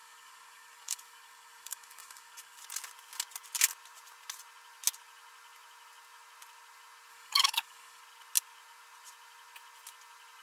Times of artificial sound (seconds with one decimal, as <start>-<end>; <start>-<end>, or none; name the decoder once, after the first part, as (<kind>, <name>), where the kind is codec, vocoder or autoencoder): 0.0-2.6 (codec, DAC); 7.1-8.0